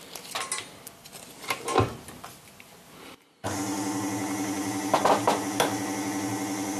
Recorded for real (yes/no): yes